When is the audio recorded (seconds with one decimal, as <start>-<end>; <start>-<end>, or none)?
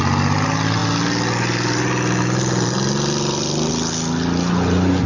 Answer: 0.0-5.1